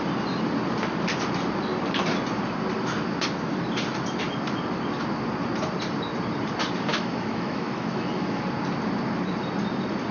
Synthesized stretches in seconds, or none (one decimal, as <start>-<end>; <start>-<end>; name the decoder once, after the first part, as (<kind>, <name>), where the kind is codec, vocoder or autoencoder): 6.9-8.4 (autoencoder, DAC-VAE)